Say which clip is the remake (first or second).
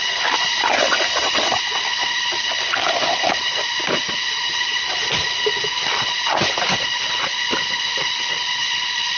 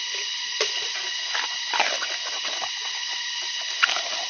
first